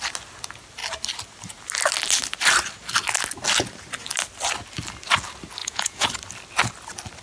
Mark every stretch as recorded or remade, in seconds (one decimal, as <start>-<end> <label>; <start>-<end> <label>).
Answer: 0.0-5.6 recorded; 5.6-6.1 remade; 6.1-7.2 recorded